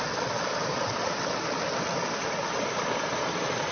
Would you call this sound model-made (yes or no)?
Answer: yes